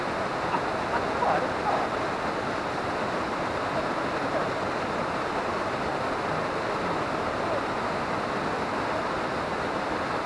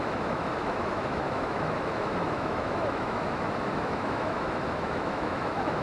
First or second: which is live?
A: first